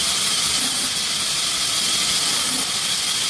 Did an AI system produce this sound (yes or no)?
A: no